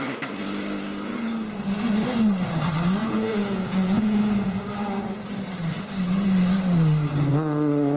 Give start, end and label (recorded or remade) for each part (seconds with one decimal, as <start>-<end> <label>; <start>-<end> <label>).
0.0-3.0 recorded; 3.0-4.6 remade; 4.6-8.0 recorded